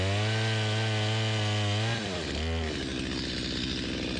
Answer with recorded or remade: recorded